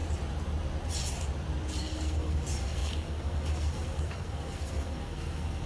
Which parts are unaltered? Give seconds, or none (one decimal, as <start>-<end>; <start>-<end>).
0.0-1.8